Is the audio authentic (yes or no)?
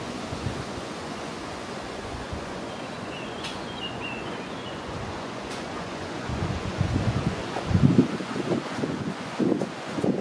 no